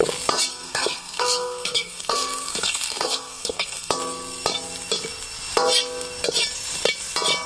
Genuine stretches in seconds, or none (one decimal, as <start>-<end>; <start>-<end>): 0.0-0.5; 3.9-7.5